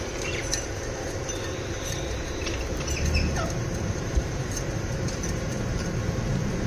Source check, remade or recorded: remade